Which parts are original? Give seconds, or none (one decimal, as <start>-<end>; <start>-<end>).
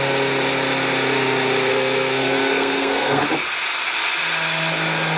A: 0.0-1.7; 3.2-5.2